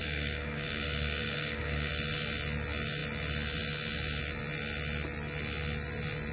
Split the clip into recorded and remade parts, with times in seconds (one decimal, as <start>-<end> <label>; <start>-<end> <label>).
0.0-1.9 remade; 1.9-6.3 recorded